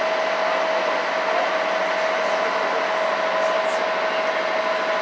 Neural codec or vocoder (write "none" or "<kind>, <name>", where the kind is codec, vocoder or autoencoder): none